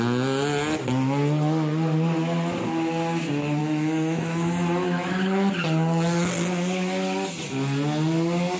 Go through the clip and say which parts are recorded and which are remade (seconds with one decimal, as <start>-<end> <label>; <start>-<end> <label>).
0.0-3.6 recorded; 3.6-5.1 remade; 5.1-8.6 recorded